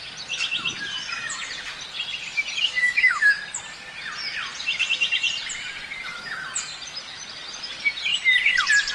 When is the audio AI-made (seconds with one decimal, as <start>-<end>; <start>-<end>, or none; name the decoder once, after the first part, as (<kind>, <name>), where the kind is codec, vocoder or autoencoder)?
2.8-3.4 (autoencoder, DAC-VAE)